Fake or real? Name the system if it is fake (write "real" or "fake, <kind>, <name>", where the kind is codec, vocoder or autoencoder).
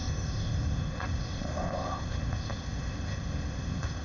fake, codec, ZipCodec